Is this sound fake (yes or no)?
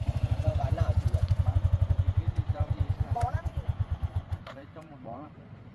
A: yes